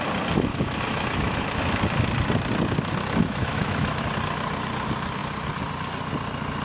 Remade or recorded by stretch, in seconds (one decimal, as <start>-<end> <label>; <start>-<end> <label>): 0.0-0.5 recorded; 0.5-1.4 remade; 1.4-3.2 recorded; 3.2-4.0 remade; 4.0-6.6 recorded